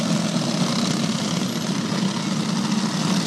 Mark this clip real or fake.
real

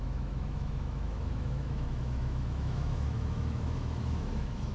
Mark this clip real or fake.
fake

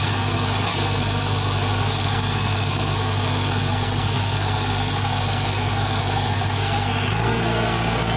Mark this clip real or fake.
fake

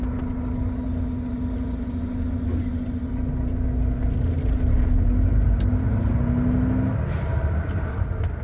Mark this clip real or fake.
real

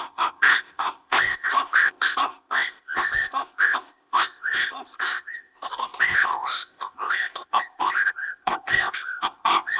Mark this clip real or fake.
fake